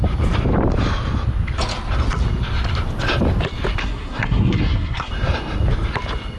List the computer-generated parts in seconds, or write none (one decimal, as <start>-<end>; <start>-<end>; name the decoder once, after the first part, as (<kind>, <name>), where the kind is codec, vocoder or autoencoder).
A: 3.8-5.1 (codec, SNAC)